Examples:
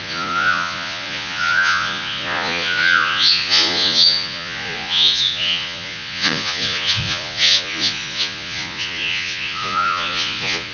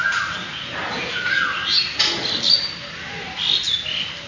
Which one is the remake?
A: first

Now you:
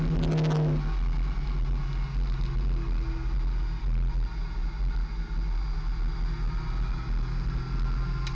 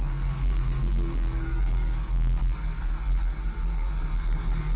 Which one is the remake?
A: second